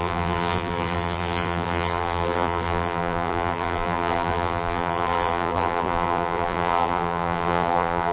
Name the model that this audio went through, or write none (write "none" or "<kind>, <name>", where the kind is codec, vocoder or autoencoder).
vocoder, BigVGAN v2